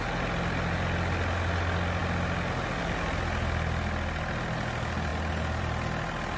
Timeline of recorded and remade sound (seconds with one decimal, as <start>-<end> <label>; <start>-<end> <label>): 0.0-6.4 recorded